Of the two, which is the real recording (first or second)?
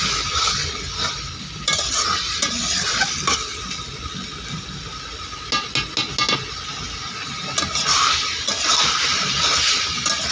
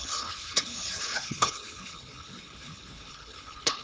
first